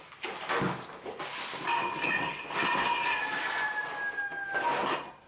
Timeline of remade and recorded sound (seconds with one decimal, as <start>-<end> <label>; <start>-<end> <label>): 0.0-5.3 recorded